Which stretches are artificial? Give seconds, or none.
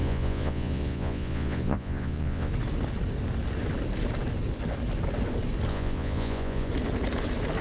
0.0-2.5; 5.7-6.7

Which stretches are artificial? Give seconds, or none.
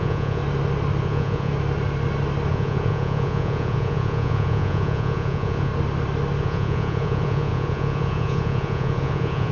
0.0-0.4; 1.0-1.5; 2.5-5.7; 6.4-9.5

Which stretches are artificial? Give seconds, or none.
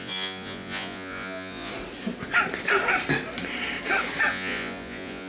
0.0-1.7; 4.3-5.3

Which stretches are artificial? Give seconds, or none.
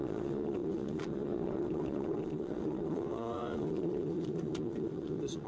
0.0-5.5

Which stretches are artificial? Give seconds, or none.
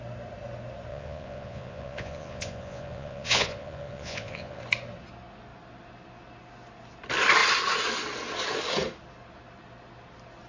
0.9-4.6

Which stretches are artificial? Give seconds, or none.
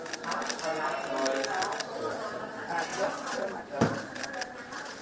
2.9-3.6